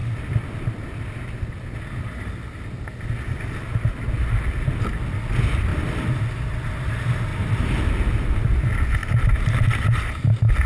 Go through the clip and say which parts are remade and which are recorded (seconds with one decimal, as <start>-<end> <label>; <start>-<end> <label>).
0.0-5.7 recorded; 5.7-6.2 remade; 6.2-7.3 recorded; 7.3-7.8 remade; 7.8-9.0 recorded; 9.0-10.0 remade; 10.0-10.7 recorded